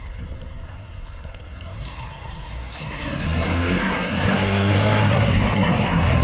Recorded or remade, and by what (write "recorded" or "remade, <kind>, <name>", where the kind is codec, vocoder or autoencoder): remade, codec, SNAC